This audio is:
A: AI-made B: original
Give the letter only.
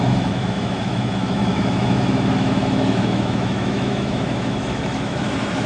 A